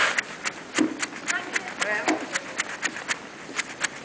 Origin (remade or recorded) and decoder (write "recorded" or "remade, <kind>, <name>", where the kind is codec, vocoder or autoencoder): recorded